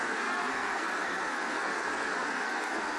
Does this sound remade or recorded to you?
remade